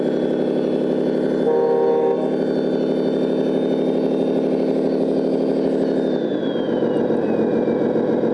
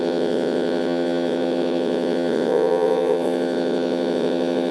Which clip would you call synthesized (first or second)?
second